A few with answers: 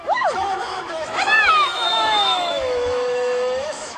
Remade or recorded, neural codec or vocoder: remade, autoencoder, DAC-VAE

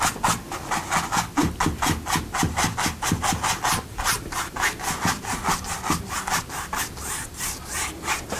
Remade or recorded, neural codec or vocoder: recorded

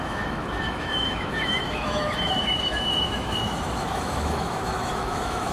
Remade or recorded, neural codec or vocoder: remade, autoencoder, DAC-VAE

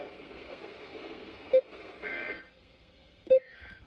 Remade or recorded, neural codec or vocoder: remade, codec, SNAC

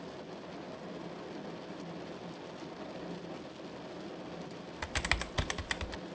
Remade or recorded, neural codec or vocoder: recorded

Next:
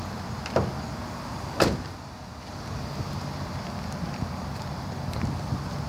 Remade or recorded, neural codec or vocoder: recorded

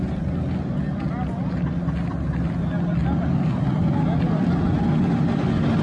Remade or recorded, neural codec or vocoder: recorded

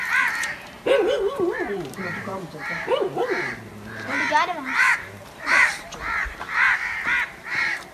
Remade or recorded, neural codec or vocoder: remade, vocoder, BigVGAN v2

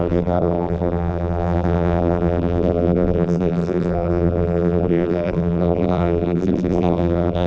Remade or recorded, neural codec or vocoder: remade, vocoder, BigVGAN v2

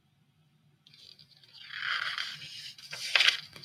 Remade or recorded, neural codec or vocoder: remade, vocoder, BigVGAN v2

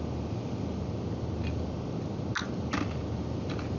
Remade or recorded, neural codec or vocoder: recorded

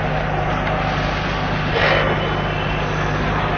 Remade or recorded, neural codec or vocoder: recorded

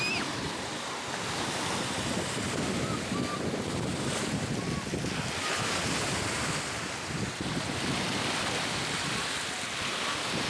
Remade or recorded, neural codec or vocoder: recorded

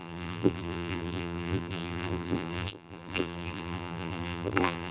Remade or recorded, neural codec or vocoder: remade, vocoder, BigVGAN v2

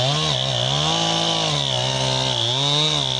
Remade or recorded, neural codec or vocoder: recorded